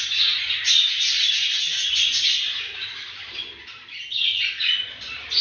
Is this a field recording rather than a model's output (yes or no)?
yes